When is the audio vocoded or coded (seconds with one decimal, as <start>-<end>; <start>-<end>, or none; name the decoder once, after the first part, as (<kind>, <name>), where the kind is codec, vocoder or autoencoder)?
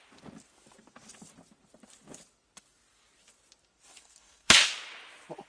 4.0-4.6 (codec, SNAC)